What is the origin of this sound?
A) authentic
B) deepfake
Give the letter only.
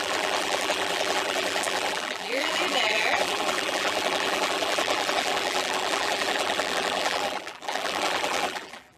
B